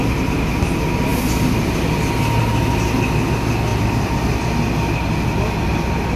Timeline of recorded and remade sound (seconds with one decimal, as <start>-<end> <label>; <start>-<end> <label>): 0.0-3.7 recorded; 3.7-4.2 remade; 4.2-6.2 recorded